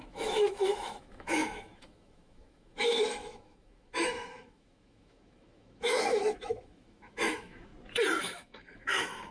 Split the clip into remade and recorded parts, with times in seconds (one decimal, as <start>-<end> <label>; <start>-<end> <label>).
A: 0.0-7.7 remade; 7.7-8.2 recorded; 8.2-9.3 remade

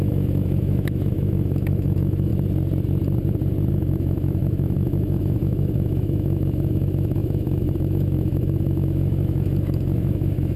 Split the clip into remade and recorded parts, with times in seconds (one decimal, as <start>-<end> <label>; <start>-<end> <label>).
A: 0.0-2.3 remade; 2.3-3.7 recorded; 3.7-10.6 remade

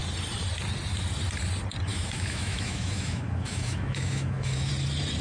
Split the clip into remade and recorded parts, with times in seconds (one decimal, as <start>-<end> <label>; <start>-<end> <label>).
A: 0.0-1.9 recorded; 1.9-4.7 remade; 4.7-5.2 recorded